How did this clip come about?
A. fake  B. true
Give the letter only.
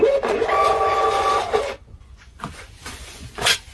A